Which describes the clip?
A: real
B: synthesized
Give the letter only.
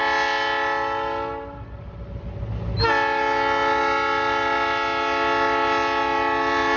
A